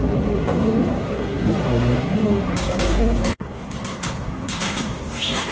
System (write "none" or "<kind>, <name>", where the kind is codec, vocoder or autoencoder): codec, SNAC